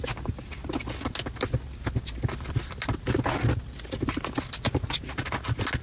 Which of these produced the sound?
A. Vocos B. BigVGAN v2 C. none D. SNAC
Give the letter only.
C